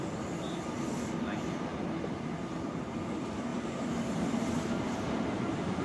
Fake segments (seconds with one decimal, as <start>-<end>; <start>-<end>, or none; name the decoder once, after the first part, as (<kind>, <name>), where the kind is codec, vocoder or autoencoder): none